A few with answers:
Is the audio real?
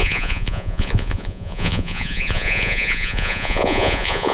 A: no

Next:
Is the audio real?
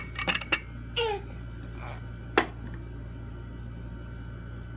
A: yes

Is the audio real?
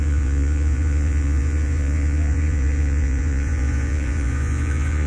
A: no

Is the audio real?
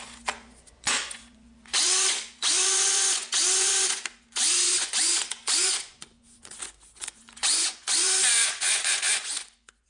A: no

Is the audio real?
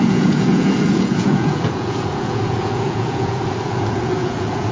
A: no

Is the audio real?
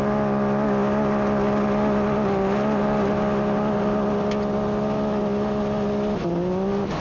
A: yes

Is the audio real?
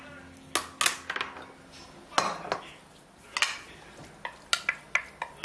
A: yes